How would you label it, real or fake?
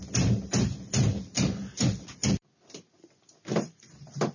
real